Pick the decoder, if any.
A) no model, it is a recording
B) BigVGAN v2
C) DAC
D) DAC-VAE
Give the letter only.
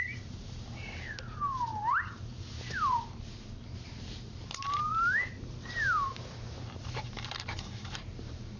B